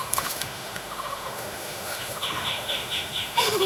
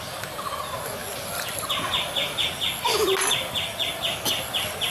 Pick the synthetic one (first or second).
first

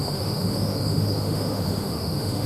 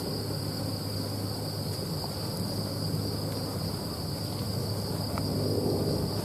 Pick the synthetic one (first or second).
first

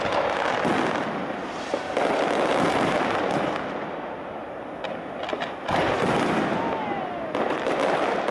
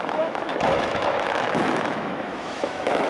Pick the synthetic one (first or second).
second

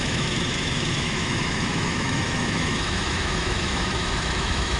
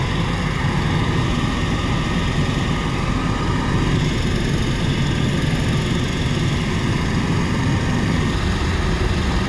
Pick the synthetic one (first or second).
first